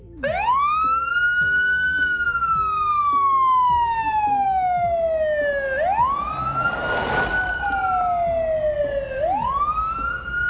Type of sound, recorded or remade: recorded